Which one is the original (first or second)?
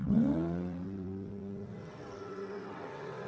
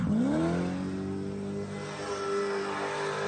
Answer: second